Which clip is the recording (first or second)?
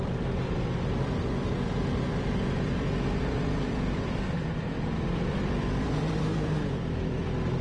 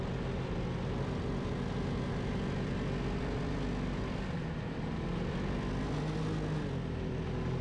second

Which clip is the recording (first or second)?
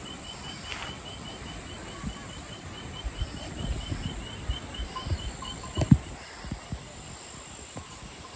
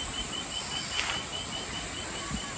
second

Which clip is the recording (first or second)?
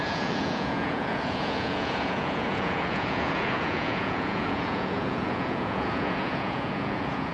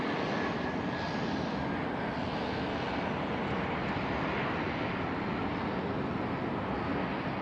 second